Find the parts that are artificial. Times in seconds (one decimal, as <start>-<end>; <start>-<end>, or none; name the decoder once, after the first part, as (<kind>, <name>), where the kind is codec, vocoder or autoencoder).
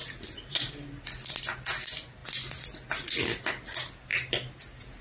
none